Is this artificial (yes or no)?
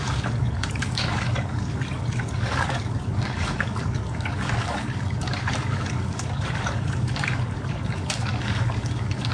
yes